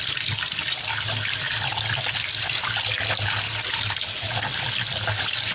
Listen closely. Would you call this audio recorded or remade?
recorded